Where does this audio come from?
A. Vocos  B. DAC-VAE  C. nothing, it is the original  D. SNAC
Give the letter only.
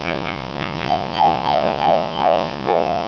A